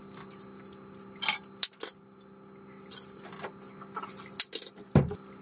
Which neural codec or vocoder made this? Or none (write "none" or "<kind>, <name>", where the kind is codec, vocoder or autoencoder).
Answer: none